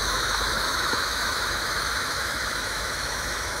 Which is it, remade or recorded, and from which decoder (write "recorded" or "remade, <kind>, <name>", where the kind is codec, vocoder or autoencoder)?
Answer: remade, autoencoder, DAC-VAE